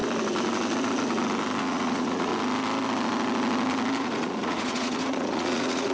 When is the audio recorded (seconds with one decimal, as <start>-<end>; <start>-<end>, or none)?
0.0-1.6; 2.3-4.0